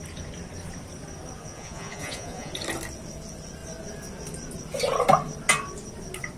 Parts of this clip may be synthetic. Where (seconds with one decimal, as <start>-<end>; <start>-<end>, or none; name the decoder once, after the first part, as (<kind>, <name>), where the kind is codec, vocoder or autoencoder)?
1.4-2.5 (vocoder, Vocos)